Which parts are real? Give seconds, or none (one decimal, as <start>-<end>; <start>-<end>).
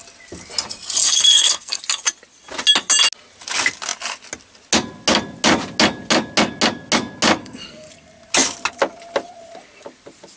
0.0-1.0; 1.8-7.4; 7.9-10.4